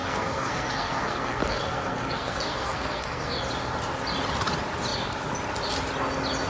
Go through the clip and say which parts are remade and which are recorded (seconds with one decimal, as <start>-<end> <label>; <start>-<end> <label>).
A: 0.0-3.4 remade; 3.4-6.5 recorded